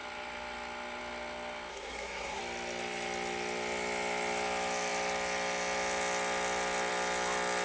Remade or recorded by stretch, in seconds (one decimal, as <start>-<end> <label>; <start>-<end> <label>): 0.0-1.7 recorded; 1.7-2.4 remade; 2.4-7.6 recorded